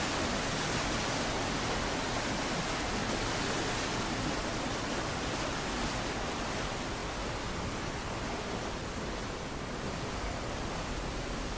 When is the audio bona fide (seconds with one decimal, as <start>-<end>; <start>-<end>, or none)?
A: 0.0-11.6